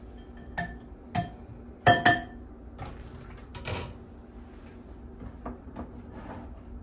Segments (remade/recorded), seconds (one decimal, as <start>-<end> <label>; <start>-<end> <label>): 0.0-6.8 recorded